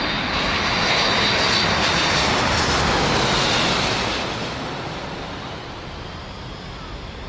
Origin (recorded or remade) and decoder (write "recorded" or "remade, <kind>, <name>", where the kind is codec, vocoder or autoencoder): recorded